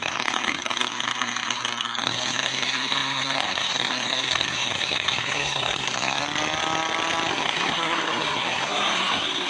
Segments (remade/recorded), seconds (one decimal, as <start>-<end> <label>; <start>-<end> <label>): 0.0-6.2 remade; 6.2-7.3 recorded; 7.3-9.5 remade